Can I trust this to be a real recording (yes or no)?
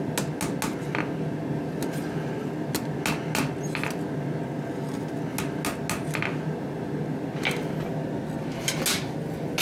yes